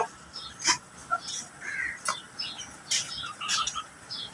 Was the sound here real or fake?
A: real